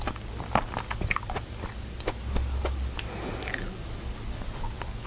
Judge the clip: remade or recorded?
recorded